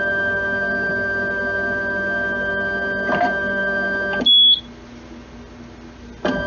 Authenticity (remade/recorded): recorded